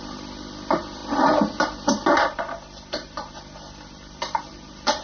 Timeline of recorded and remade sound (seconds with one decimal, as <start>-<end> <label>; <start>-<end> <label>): 0.0-5.0 recorded